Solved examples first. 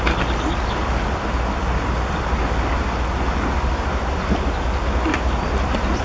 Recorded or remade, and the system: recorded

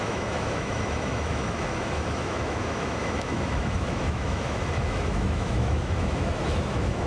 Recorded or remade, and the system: remade, autoencoder, DAC-VAE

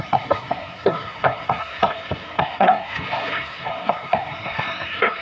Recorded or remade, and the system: remade, codec, SNAC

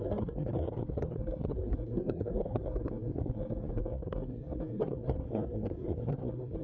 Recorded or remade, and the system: remade, codec, SNAC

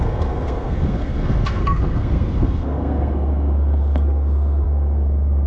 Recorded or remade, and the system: remade, codec, SNAC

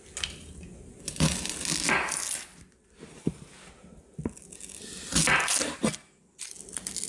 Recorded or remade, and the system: recorded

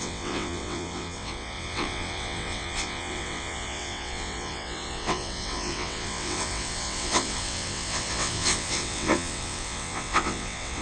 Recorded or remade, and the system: remade, vocoder, WaveNeXt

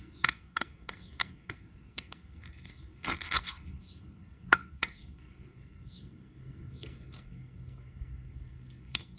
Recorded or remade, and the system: remade, codec, SNAC